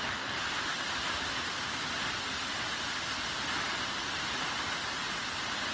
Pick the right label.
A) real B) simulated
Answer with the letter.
A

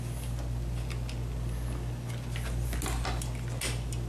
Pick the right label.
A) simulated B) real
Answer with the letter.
B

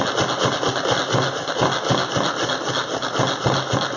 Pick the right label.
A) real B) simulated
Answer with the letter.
A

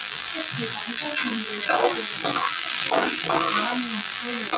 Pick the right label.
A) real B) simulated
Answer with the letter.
B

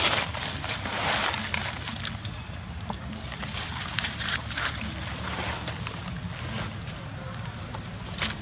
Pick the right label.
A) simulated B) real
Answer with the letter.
B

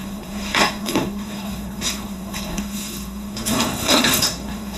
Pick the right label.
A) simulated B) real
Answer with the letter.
A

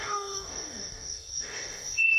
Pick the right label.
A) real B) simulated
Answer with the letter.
B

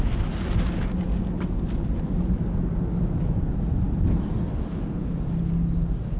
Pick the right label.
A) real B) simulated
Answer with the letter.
A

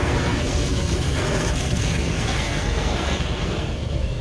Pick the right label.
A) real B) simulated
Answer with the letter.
B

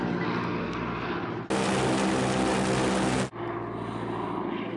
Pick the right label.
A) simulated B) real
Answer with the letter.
B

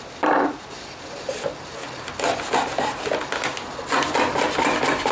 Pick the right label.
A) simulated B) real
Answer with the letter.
B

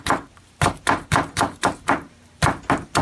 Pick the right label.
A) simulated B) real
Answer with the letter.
B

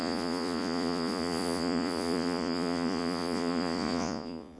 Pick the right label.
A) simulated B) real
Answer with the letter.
A